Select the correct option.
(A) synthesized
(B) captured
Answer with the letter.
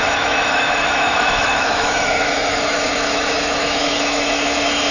A